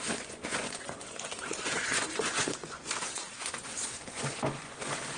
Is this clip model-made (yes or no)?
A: yes